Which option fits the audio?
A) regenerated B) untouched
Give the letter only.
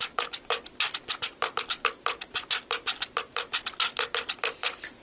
B